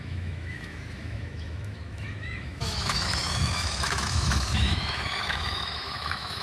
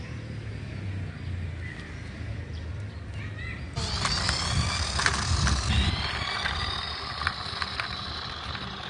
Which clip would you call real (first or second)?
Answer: second